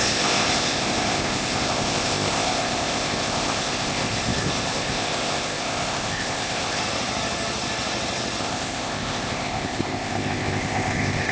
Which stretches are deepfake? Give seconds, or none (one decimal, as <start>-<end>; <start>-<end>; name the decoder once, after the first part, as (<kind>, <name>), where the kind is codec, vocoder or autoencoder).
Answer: 0.0-6.8 (codec, ZipCodec); 8.4-11.3